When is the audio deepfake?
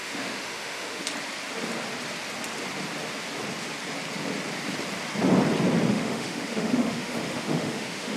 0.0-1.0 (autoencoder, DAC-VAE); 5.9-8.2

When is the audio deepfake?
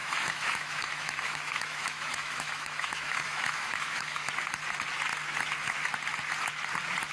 0.0-4.3 (autoencoder, DAC-VAE)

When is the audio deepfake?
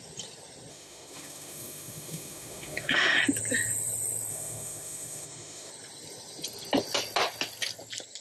0.7-3.2 (autoencoder, DAC-VAE); 4.3-5.7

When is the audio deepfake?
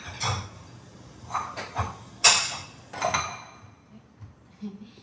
none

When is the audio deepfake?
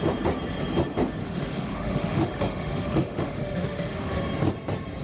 1.2-4.2 (autoencoder, DAC-VAE)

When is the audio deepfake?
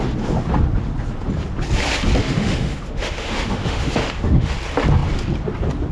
2.2-4.5 (autoencoder, DAC-VAE)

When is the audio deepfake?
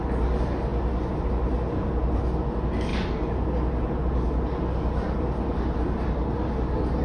none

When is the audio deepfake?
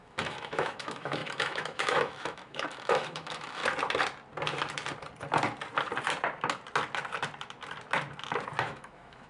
0.0-3.6 (autoencoder, DAC-VAE); 8.6-9.3